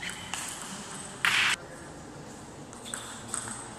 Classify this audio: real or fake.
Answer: real